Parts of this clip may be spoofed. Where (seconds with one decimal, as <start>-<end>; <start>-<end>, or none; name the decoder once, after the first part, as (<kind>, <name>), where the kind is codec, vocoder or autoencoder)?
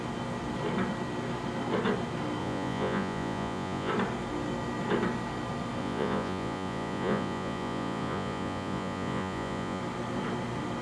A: 2.4-3.9 (vocoder, Vocos); 5.8-9.8